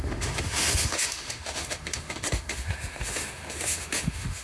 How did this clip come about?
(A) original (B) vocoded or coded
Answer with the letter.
B